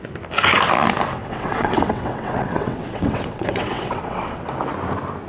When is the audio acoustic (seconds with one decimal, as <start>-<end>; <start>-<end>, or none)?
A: 0.0-1.2; 4.4-5.3